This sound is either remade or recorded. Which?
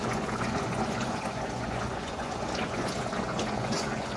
remade